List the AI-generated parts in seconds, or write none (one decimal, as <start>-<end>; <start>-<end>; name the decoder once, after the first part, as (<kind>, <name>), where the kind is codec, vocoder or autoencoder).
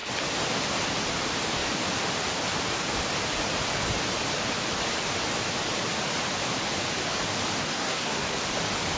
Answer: 7.6-8.4 (codec, SNAC)